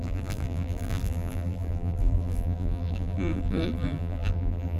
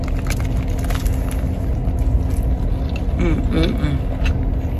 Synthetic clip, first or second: first